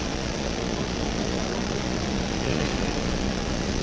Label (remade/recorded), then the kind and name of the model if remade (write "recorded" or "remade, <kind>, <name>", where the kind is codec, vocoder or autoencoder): remade, vocoder, Vocos